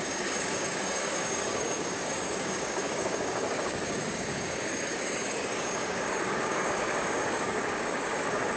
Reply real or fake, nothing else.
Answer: fake